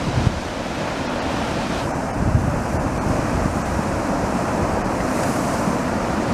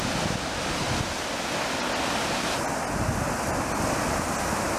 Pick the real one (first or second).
second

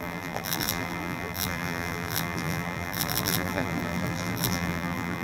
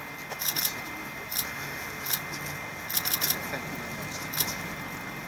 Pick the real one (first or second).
second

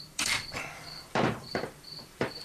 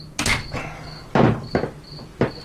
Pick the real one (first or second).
second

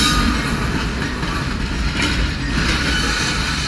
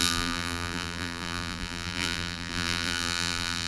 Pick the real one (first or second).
first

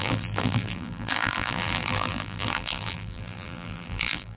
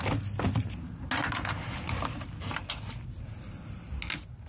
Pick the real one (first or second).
second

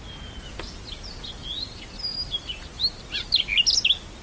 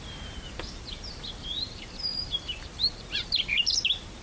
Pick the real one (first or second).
first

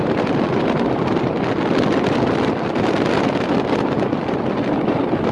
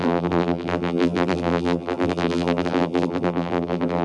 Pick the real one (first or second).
first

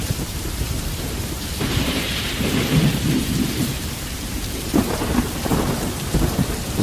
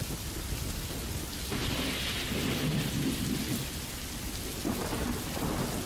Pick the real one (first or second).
second